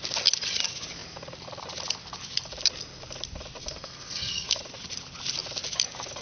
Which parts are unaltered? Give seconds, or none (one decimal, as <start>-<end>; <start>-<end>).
0.0-3.6; 4.6-6.2